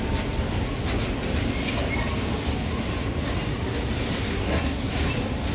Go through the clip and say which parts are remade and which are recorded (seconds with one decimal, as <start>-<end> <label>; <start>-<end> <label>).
0.0-4.3 recorded; 4.3-4.9 remade; 4.9-5.5 recorded